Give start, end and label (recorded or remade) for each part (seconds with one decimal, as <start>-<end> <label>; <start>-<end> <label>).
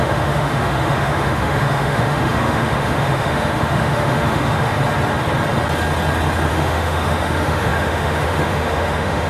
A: 0.0-4.8 remade; 4.8-6.5 recorded; 6.5-9.3 remade